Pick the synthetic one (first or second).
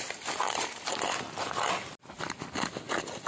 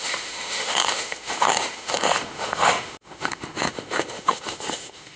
second